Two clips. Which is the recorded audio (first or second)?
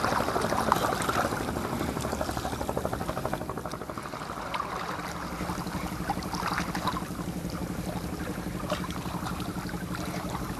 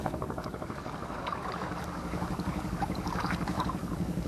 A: first